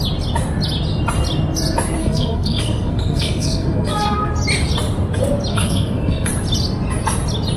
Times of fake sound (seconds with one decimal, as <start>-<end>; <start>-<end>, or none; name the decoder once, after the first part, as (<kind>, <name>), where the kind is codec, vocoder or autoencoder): 2.0-4.3 (codec, SNAC); 5.5-6.3